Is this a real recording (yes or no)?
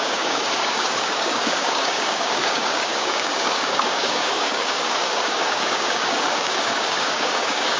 no